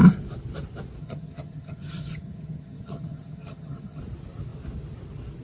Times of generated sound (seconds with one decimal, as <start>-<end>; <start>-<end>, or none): 1.0-4.0